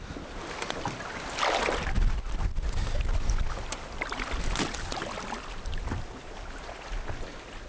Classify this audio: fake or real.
real